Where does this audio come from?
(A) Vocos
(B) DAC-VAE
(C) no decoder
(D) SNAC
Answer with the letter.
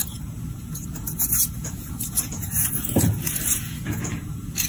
A